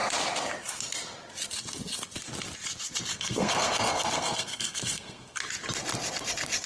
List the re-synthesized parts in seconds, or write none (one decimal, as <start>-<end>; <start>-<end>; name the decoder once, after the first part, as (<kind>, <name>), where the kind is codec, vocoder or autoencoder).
3.1-5.4 (codec, SNAC)